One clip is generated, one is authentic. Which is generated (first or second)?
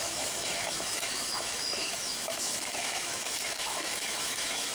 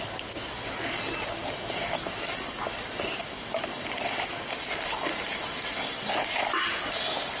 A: first